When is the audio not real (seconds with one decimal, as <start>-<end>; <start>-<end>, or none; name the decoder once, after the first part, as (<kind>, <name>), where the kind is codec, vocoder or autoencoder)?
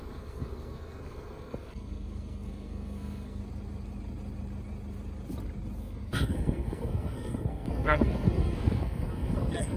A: 0.0-3.4 (codec, SNAC); 5.8-9.8